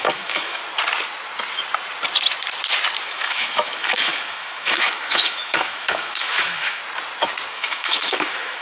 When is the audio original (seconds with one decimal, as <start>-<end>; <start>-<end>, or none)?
0.6-3.0; 6.8-7.5